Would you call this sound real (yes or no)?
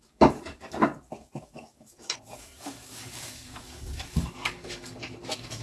no